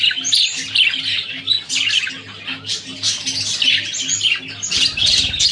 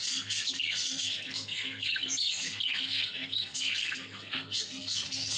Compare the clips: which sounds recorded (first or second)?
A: first